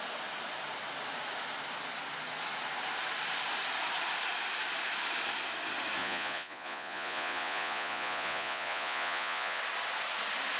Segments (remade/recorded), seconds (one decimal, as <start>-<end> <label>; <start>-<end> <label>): 0.0-6.0 recorded; 6.0-9.6 remade; 9.6-10.6 recorded